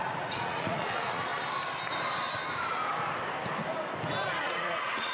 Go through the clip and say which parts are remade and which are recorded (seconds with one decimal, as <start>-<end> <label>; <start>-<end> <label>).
0.0-1.3 remade; 1.3-4.4 recorded; 4.4-5.1 remade